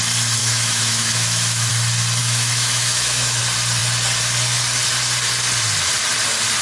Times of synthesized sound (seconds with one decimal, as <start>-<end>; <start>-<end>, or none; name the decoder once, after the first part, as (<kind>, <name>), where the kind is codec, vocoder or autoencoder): 0.4-1.7 (autoencoder, DAC-VAE); 2.2-3.4